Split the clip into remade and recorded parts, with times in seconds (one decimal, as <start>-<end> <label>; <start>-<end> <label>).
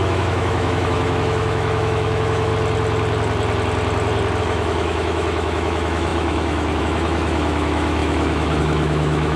0.0-2.5 remade; 2.5-4.4 recorded; 4.4-9.4 remade